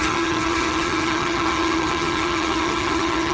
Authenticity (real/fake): fake